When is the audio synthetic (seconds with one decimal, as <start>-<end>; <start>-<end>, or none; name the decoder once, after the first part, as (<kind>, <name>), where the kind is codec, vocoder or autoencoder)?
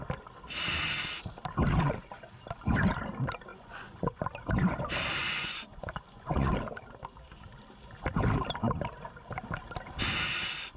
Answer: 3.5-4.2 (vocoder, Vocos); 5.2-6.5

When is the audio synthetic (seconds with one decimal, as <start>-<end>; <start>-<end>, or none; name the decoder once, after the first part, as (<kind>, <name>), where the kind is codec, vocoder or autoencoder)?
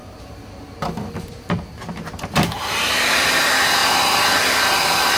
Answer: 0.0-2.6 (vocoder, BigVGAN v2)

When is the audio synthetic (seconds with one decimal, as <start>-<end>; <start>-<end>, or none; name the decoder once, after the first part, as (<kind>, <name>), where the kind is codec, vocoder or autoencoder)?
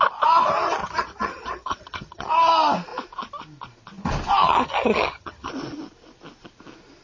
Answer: 0.8-2.3 (vocoder, HiFi-GAN); 4.4-5.5